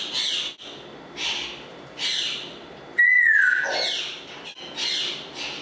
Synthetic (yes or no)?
no